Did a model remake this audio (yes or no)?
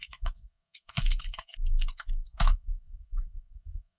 yes